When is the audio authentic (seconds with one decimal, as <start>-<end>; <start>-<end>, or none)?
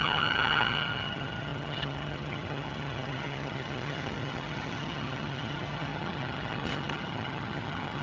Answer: none